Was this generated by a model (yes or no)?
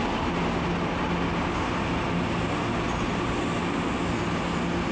no